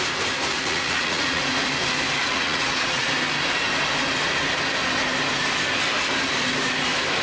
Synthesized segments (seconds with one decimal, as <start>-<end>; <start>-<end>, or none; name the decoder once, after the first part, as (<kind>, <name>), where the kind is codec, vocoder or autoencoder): 0.5-1.4 (vocoder, Vocos); 2.2-3.1